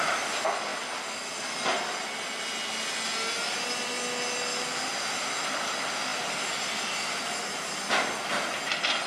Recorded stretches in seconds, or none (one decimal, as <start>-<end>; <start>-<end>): 0.0-9.1